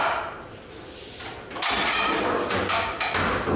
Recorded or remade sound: recorded